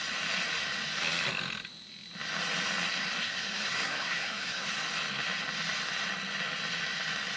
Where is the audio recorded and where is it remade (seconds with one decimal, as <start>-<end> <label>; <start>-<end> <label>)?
0.0-3.2 recorded; 3.2-4.7 remade; 4.7-7.4 recorded